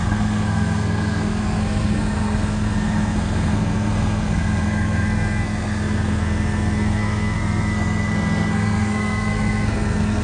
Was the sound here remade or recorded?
remade